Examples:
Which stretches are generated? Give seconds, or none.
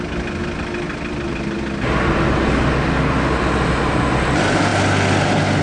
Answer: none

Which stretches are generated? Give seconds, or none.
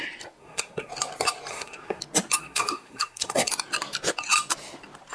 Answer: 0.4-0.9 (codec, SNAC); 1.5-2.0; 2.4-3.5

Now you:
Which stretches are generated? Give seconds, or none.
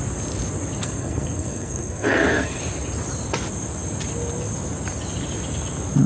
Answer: 0.8-2.6 (codec, SNAC)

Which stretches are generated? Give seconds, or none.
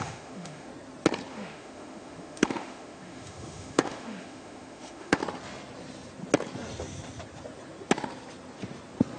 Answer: 0.0-0.7 (autoencoder, DAC-VAE); 1.3-5.2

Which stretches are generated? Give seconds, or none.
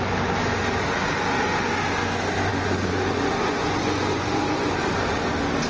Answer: 2.5-4.8 (vocoder, Vocos)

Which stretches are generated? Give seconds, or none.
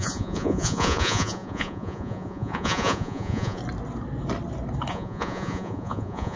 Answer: 0.0-3.6 (vocoder, Vocos); 4.9-6.4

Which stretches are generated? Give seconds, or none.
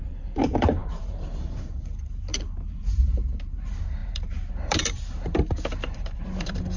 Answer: 0.0-6.8 (vocoder, BigVGAN v2)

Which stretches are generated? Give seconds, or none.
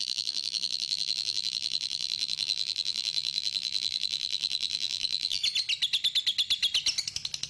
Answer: 0.0-5.4 (vocoder, BigVGAN v2)